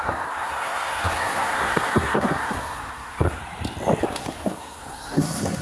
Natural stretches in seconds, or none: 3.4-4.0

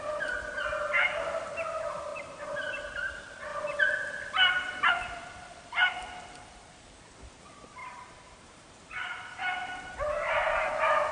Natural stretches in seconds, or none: 0.0-2.1; 3.1-7.8; 9.2-11.1

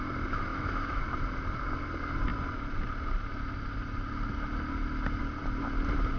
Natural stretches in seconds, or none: 0.0-0.5; 1.0-6.2

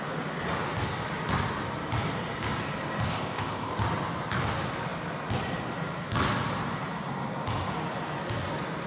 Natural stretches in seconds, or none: 0.0-3.1; 3.7-8.9

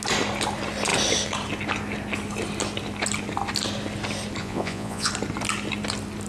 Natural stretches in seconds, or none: 0.0-4.4; 5.1-6.3

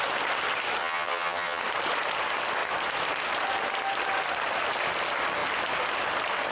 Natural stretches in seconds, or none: 0.0-0.8; 1.6-6.5

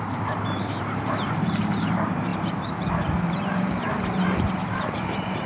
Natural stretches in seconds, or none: none

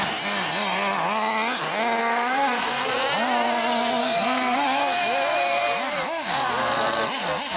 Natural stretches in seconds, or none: 0.0-2.0; 2.9-4.0; 4.8-7.6